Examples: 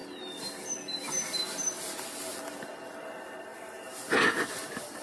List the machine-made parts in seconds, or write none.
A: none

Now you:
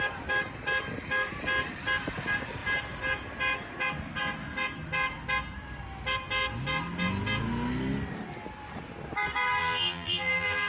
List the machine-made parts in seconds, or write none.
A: 9.6-10.7 (vocoder, BigVGAN v2)

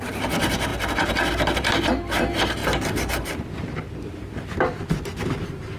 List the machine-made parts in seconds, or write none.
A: 0.0-0.7 (vocoder, BigVGAN v2); 1.3-5.8